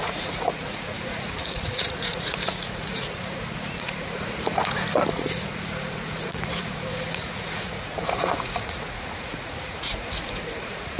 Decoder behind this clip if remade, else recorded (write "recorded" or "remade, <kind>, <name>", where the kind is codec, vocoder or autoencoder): remade, vocoder, Vocos